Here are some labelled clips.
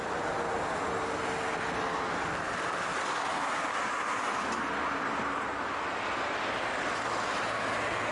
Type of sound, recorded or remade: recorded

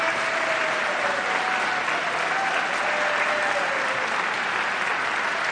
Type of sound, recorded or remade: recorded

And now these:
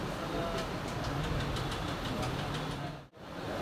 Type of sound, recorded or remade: recorded